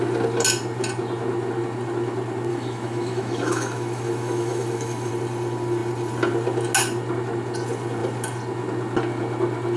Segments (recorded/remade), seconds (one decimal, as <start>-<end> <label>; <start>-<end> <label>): 0.0-2.5 recorded; 2.5-5.1 remade; 5.1-9.8 recorded